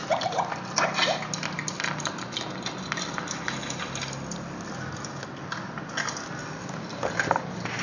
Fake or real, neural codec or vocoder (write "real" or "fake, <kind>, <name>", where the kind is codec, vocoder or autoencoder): real